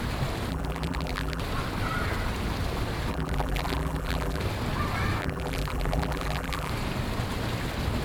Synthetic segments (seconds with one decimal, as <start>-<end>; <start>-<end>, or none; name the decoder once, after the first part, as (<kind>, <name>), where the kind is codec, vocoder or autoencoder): 0.5-1.4 (vocoder, BigVGAN v2); 3.1-4.4; 5.2-6.7